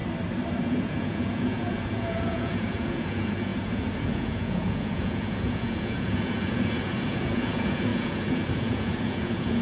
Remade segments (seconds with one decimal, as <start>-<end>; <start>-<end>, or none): 0.6-9.6